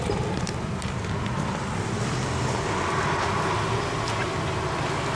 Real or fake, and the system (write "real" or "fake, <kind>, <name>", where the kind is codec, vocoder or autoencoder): real